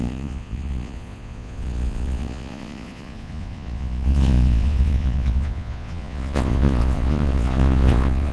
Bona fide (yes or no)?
no